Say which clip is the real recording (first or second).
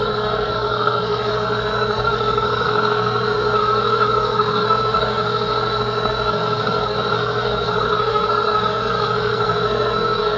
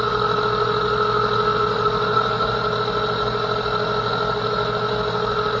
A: second